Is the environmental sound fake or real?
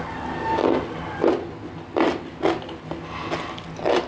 real